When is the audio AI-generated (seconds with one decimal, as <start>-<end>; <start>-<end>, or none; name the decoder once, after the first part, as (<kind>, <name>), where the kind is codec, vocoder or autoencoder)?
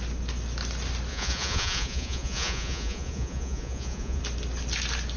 1.1-4.2 (vocoder, Vocos)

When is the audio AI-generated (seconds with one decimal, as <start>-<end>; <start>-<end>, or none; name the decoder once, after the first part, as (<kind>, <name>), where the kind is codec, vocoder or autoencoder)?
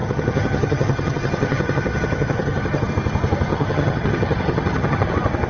0.0-2.9 (vocoder, HiFi-GAN); 3.5-5.1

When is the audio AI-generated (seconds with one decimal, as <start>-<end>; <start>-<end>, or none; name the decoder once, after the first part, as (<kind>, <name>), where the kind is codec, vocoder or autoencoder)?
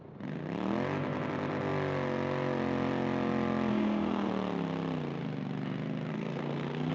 3.7-4.3 (codec, SNAC); 6.1-6.9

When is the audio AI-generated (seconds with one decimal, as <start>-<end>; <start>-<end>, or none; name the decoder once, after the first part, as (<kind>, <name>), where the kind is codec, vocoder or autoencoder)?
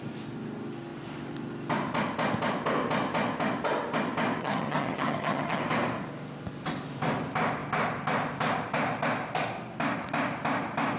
4.4-5.6 (vocoder, HiFi-GAN)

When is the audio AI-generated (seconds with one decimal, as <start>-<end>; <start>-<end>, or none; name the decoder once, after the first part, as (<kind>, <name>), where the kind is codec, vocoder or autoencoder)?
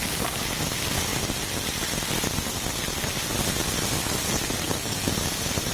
4.6-5.2 (codec, SNAC)